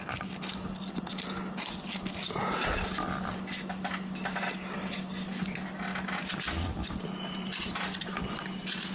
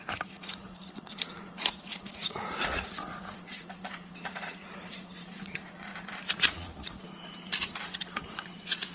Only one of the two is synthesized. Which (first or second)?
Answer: second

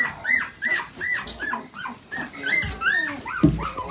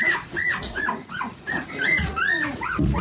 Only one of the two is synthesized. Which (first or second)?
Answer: second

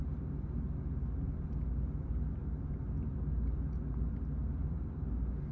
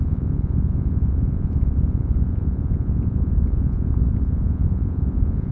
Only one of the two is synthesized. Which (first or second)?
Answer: second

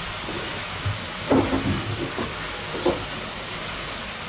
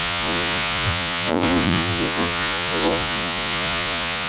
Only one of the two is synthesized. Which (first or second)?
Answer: second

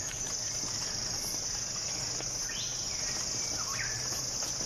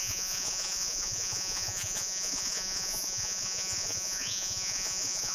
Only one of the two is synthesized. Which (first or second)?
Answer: second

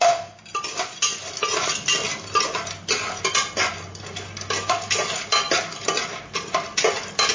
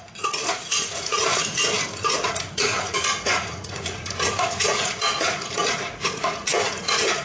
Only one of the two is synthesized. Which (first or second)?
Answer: second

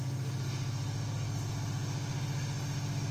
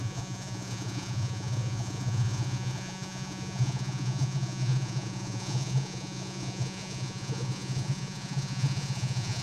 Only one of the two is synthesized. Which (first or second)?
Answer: second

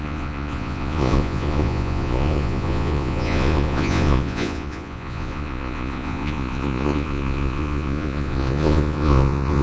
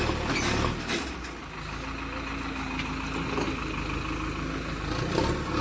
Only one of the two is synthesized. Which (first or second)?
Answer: first